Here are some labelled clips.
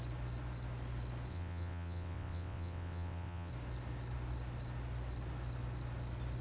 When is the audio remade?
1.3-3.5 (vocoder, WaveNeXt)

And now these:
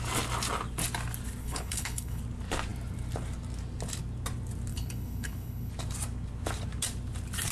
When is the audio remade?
1.4-2.2 (codec, HILCodec); 4.7-5.7

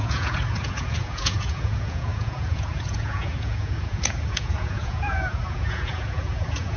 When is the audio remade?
0.0-6.8 (vocoder, Vocos)

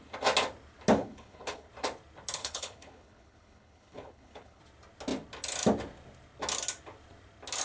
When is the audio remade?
1.0-1.7 (codec, HILCodec); 2.4-4.6

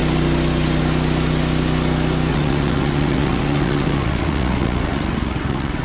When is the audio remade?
2.3-5.8 (vocoder, WaveNeXt)

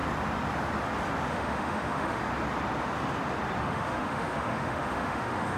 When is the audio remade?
1.3-2.2 (autoencoder, DAC-VAE); 3.6-5.6